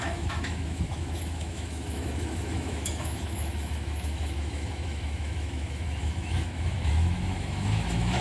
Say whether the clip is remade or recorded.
remade